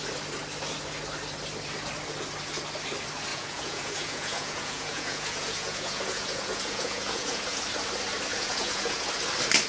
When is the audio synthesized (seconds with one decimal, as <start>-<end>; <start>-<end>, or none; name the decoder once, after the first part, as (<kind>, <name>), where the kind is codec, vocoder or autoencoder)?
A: 3.3-7.6 (vocoder, Vocos); 8.3-9.1

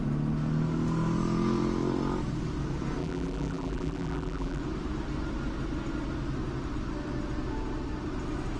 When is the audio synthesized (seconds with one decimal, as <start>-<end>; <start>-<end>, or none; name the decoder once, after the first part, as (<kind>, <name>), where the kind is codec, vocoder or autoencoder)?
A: 3.0-4.6 (vocoder, BigVGAN v2)

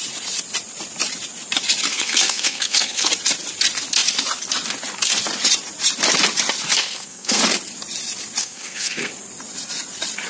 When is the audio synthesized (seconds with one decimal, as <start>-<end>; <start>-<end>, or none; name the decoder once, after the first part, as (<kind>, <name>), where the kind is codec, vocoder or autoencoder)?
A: 1.9-3.1 (codec, SNAC); 6.8-7.4; 8.4-9.1

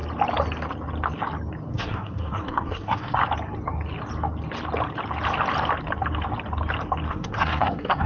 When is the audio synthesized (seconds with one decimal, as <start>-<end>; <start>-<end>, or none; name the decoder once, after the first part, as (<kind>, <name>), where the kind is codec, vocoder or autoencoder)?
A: 1.7-3.2 (codec, SNAC); 7.1-8.1

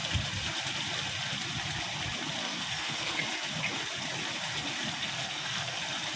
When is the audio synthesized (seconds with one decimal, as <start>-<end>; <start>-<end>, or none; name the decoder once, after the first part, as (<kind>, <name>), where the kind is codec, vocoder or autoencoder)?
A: 2.4-3.2 (codec, SNAC); 5.0-5.8

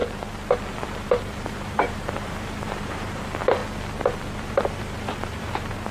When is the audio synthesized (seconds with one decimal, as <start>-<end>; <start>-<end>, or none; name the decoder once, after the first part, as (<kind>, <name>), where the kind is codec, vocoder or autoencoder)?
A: 0.7-3.6 (vocoder, BigVGAN v2); 4.2-5.9

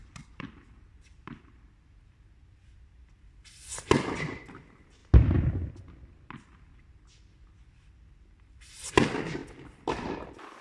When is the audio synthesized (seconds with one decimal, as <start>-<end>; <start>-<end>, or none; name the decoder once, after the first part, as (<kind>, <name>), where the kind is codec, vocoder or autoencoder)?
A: 0.0-1.4 (vocoder, BigVGAN v2); 9.4-10.6

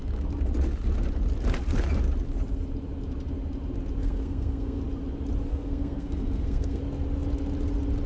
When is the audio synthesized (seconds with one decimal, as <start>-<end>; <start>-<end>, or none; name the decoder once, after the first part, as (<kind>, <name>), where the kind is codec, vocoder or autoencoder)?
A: 4.0-4.8 (codec, SNAC); 5.5-6.8